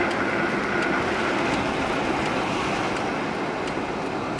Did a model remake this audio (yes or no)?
no